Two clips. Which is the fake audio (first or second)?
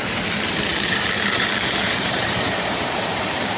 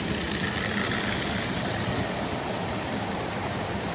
first